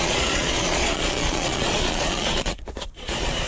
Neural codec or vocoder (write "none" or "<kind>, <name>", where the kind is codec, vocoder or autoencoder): vocoder, Vocos